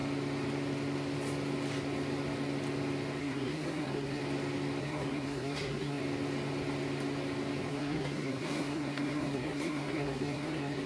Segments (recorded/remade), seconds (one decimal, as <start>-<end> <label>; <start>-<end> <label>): 0.0-3.2 recorded; 3.2-4.2 remade; 4.2-4.8 recorded; 4.8-6.0 remade; 6.0-7.7 recorded; 7.7-10.9 remade